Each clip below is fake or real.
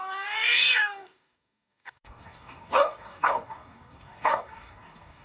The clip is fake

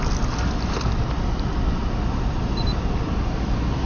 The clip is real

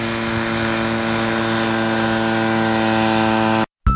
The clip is real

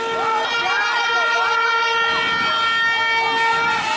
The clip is real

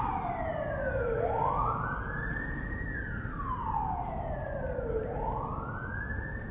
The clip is real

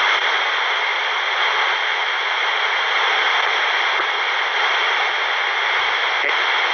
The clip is real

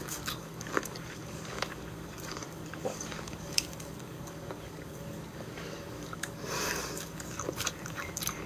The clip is fake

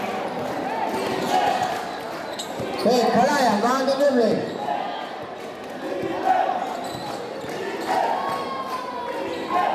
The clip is real